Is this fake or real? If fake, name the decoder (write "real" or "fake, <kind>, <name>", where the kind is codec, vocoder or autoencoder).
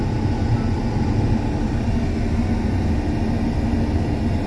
real